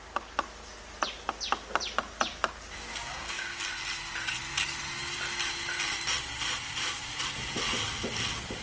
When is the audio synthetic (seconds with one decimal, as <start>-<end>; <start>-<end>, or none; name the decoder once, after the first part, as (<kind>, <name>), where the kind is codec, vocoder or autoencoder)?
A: 2.9-3.6 (codec, DAC)